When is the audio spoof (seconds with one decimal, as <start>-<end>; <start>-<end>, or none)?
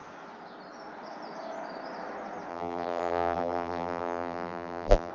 2.5-5.1